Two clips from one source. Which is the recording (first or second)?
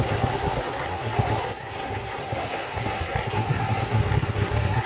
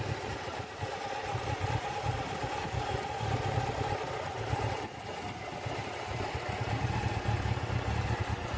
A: second